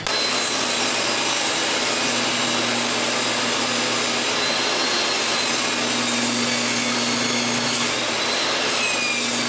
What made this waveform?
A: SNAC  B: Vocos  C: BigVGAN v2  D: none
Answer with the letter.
D